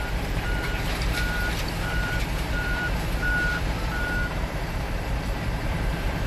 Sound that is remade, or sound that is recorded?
remade